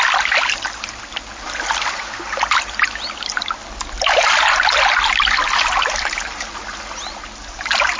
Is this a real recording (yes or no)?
yes